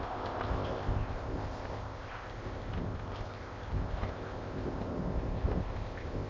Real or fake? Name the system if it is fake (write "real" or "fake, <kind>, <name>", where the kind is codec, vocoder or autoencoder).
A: fake, codec, ZipCodec